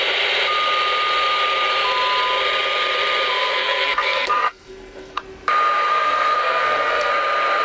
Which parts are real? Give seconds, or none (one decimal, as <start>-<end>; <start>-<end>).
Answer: 0.0-3.3; 5.2-5.9; 7.1-7.6